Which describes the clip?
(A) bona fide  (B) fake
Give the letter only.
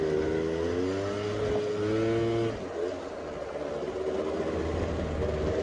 A